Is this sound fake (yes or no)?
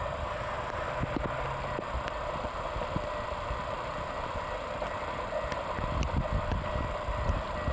no